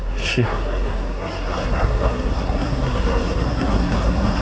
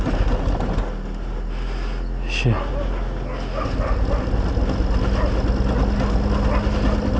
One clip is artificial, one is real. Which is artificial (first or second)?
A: first